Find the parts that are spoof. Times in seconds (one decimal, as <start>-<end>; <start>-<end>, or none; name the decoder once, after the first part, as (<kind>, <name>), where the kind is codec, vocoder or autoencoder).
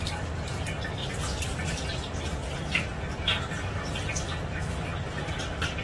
1.0-2.8 (vocoder, BigVGAN v2); 4.9-5.8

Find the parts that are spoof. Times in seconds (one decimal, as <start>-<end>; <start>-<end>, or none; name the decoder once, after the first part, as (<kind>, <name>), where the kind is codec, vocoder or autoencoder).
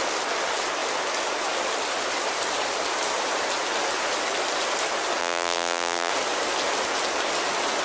5.2-6.1 (vocoder, BigVGAN v2)